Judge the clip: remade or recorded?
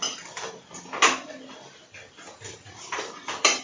recorded